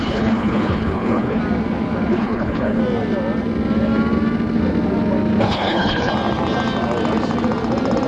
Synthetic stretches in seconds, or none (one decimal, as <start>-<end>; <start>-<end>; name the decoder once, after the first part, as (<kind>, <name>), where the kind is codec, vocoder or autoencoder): 0.0-1.4 (codec, HILCodec); 2.1-2.8; 5.4-6.1